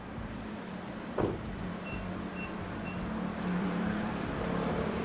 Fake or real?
fake